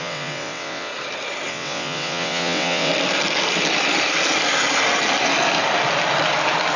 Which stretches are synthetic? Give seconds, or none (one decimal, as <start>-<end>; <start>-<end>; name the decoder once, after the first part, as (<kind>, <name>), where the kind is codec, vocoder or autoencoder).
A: 0.0-0.9 (vocoder, WaveNeXt); 1.5-2.9